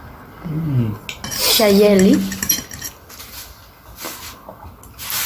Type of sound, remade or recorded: recorded